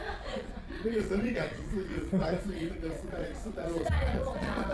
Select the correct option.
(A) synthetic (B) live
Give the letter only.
A